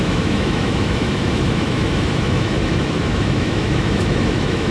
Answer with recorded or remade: remade